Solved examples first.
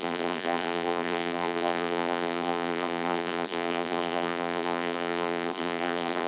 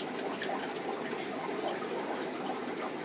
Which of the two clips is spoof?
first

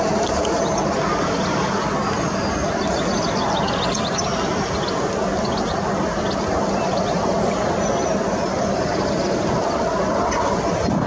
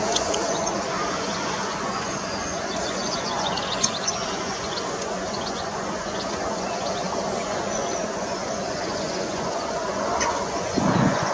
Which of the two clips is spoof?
second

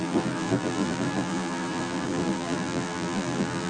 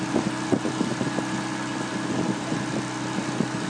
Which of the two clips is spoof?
first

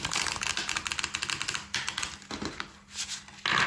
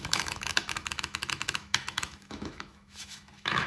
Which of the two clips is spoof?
second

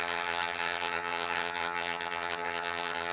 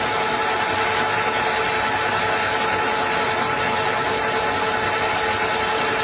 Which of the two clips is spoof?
first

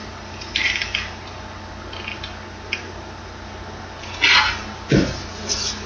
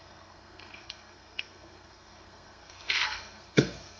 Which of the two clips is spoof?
second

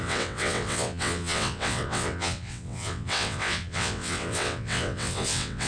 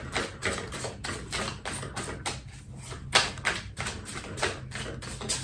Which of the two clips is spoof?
first